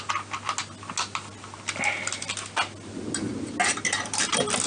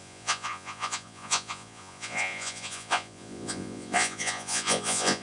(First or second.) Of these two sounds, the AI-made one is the second